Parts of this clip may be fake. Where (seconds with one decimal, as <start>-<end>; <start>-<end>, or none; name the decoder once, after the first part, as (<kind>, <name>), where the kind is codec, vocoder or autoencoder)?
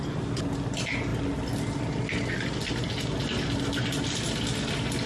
none